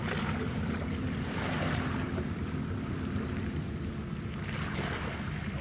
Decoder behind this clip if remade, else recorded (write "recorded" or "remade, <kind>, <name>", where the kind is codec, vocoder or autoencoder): recorded